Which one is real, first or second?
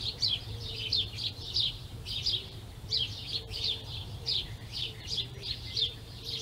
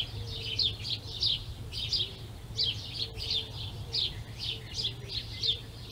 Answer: second